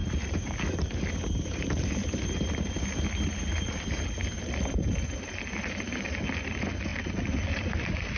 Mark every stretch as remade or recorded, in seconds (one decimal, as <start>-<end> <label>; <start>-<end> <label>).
0.0-6.9 recorded; 6.9-8.2 remade